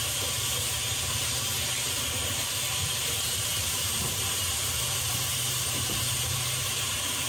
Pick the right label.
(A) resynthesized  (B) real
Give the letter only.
A